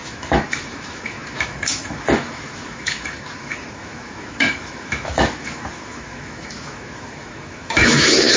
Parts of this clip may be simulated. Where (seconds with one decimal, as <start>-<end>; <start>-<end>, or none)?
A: 0.0-8.4